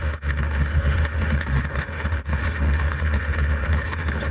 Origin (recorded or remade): remade